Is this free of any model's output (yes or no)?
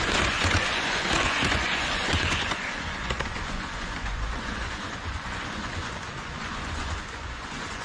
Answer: no